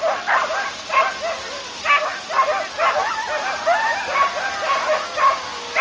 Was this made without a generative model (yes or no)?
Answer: yes